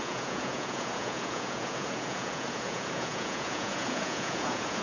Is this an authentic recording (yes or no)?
no